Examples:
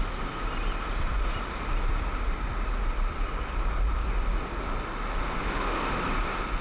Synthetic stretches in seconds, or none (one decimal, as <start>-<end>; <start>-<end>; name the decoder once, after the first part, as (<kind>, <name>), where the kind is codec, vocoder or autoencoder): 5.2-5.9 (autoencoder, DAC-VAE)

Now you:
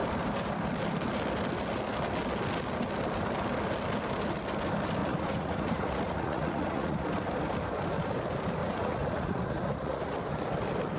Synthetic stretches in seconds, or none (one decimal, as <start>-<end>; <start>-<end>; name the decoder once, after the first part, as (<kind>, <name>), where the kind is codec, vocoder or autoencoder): 5.0-7.1 (vocoder, Vocos); 8.6-10.2

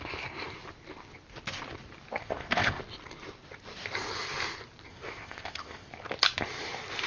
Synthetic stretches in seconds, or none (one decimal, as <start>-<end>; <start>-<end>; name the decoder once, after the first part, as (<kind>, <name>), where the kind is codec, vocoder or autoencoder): 2.2-2.8 (codec, ZipCodec); 4.9-5.9

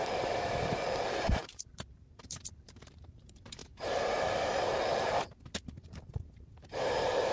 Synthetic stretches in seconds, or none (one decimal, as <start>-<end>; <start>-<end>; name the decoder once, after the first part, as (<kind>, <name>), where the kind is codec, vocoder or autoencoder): 0.0-3.6 (vocoder, BigVGAN v2); 4.2-4.8; 5.8-7.3

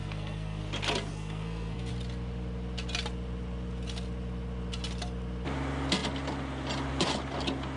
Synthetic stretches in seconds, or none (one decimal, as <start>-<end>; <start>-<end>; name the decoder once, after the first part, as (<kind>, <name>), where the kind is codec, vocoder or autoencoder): 0.0-0.6 (codec, SNAC); 1.1-1.9

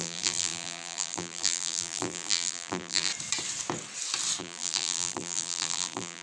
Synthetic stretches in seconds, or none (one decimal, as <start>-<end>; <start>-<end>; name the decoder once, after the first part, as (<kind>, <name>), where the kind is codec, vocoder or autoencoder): 0.0-3.1 (vocoder, BigVGAN v2); 4.4-6.2

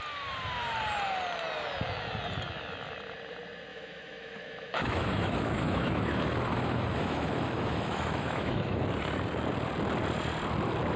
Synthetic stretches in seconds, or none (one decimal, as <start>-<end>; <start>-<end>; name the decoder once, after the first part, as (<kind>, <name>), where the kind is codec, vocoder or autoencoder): 3.7-8.8 (autoencoder, DAC-VAE)